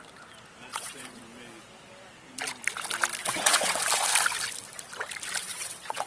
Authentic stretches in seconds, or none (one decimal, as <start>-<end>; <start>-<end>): 0.0-0.7; 1.2-3.2; 3.8-5.4